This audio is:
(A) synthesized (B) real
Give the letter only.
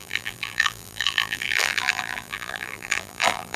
A